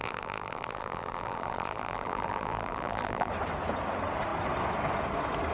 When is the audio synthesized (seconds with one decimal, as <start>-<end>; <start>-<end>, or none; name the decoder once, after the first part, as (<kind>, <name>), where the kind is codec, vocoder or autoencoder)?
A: 0.0-3.3 (vocoder, BigVGAN v2)